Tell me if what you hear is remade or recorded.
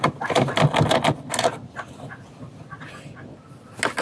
recorded